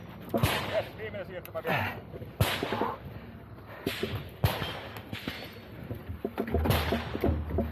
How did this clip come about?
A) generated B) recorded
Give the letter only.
B